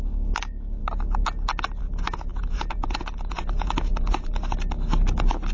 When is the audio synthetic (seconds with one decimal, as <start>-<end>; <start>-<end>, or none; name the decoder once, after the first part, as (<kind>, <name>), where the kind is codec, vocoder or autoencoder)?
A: 2.3-4.3 (vocoder, Vocos)